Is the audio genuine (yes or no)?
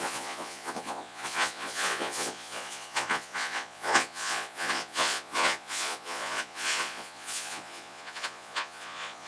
no